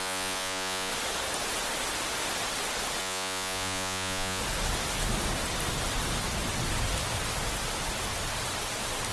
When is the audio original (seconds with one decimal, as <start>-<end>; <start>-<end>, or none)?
0.9-3.0; 4.4-9.1